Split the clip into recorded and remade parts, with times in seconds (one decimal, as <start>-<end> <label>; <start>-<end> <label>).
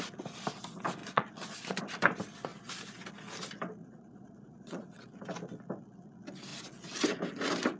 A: 0.0-1.0 recorded; 1.0-1.8 remade; 1.8-3.8 recorded; 3.8-5.0 remade; 5.0-7.8 recorded